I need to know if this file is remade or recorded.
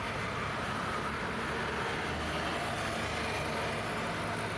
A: recorded